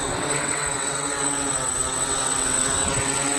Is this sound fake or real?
fake